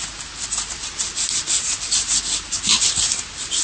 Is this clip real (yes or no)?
yes